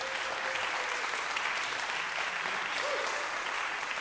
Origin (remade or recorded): recorded